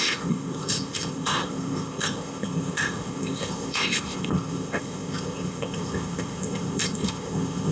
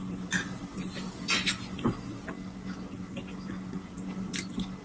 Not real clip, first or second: first